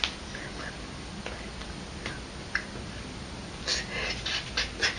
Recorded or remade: recorded